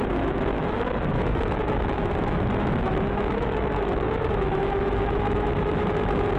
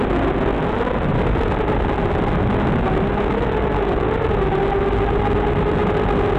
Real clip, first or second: second